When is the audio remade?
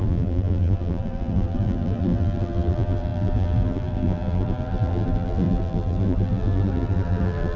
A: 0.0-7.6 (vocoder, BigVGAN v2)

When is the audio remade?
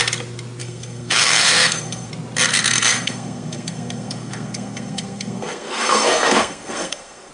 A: 0.6-2.1 (codec, SNAC); 2.5-7.3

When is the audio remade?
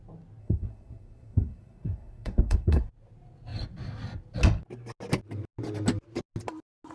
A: 0.4-2.9 (codec, SNAC)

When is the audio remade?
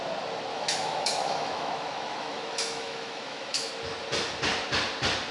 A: 0.5-3.7 (autoencoder, DAC-VAE)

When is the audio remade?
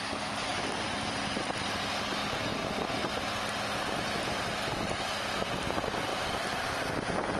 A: 0.5-1.9 (vocoder, BigVGAN v2); 6.1-6.9